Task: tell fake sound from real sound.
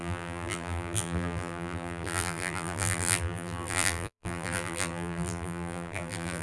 fake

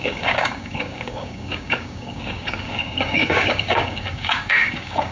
fake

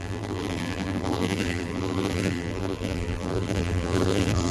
fake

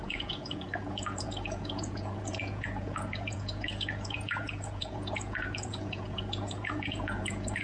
fake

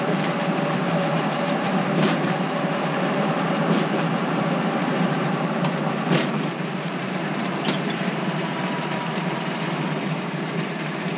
fake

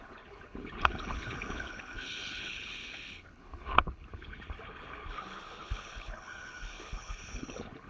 fake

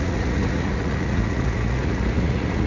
fake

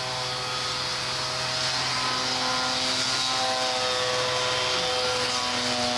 real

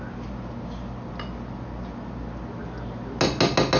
real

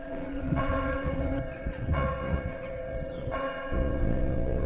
fake